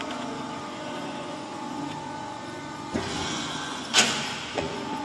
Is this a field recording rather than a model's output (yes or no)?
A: no